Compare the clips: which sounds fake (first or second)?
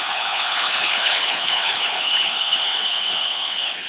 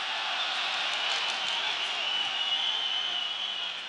first